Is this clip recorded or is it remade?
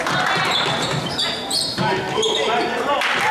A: recorded